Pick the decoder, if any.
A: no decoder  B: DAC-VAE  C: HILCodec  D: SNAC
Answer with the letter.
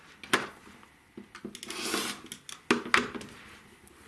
A